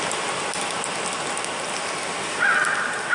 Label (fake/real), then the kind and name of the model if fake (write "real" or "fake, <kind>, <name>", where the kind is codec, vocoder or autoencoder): real